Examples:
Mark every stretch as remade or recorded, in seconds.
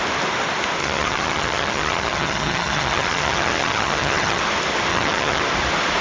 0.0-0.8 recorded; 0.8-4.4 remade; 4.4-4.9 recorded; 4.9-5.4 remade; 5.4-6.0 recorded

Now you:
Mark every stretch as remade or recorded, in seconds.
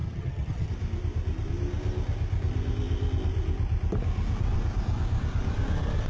0.0-0.7 remade; 0.7-6.1 recorded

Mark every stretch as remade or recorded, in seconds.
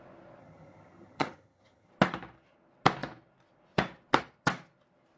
0.0-0.4 recorded; 0.4-1.9 remade; 1.9-5.2 recorded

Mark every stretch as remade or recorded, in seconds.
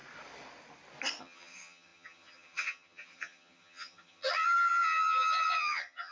0.0-1.2 recorded; 1.2-6.1 remade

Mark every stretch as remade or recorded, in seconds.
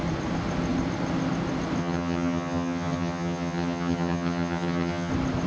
0.0-1.8 recorded; 1.8-5.1 remade; 5.1-5.5 recorded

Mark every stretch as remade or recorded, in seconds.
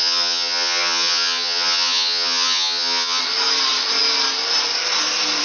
0.0-3.2 remade; 3.2-5.4 recorded